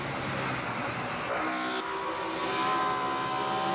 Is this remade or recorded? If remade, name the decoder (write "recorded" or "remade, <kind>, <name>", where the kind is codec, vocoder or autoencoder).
recorded